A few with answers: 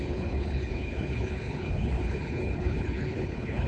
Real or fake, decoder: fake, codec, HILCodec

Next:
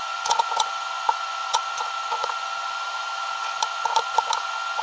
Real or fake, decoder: fake, vocoder, Vocos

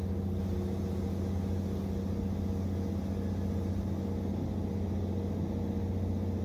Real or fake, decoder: real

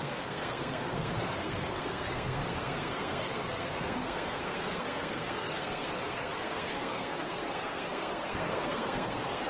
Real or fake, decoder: fake, codec, SNAC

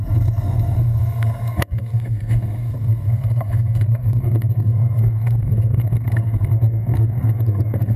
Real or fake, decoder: fake, codec, SNAC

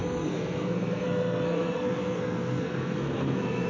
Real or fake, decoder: fake, codec, SNAC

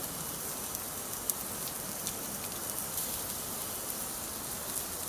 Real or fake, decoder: real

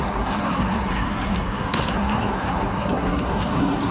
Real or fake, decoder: fake, codec, SNAC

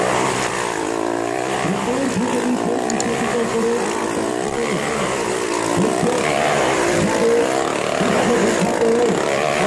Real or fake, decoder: real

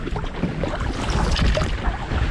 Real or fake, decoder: real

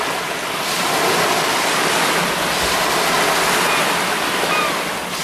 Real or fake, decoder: real